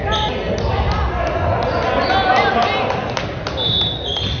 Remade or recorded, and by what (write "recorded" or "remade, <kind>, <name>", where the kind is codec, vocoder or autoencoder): recorded